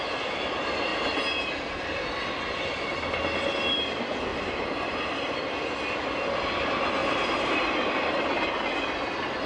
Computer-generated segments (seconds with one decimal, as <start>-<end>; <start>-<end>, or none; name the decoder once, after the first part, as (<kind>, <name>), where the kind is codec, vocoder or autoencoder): 4.3-5.4 (vocoder, BigVGAN v2); 7.0-7.9